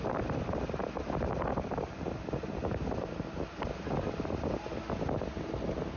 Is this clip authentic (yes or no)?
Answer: yes